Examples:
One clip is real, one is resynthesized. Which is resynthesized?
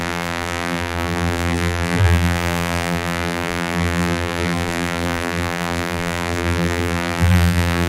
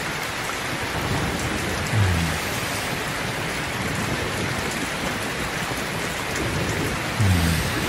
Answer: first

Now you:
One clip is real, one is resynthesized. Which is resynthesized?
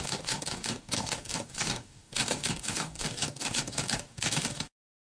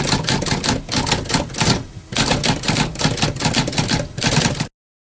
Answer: first